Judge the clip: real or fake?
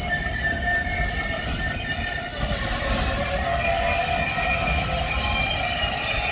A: real